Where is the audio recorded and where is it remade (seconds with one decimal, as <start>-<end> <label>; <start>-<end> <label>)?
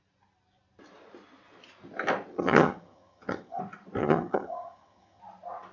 0.0-2.3 recorded; 2.3-3.6 remade; 3.6-4.0 recorded; 4.0-5.2 remade; 5.2-5.7 recorded